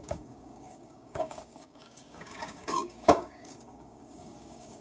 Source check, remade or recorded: remade